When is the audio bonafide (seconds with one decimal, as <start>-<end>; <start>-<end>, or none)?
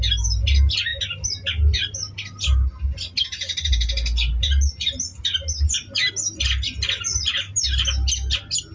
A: 0.0-8.7